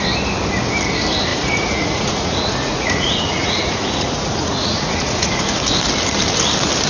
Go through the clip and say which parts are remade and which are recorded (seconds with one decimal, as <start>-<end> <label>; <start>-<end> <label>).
0.0-1.3 recorded; 1.3-5.4 remade; 5.4-6.9 recorded